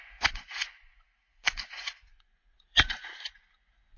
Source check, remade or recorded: remade